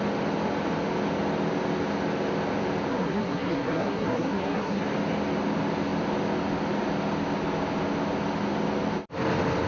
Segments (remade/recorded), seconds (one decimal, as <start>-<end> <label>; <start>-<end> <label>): 0.0-2.9 recorded; 2.9-4.8 remade; 4.8-9.7 recorded